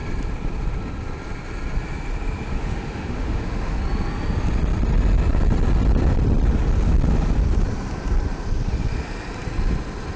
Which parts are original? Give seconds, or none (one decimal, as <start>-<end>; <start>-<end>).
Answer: 0.0-2.5; 3.8-10.2